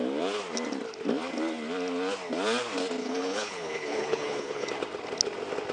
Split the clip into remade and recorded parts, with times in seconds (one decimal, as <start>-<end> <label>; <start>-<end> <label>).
0.0-3.0 recorded; 3.0-4.7 remade; 4.7-5.7 recorded